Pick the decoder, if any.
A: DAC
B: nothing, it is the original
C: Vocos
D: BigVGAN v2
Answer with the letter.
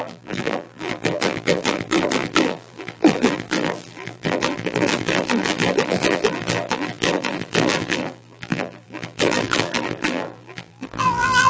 D